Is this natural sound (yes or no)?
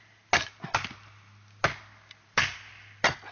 yes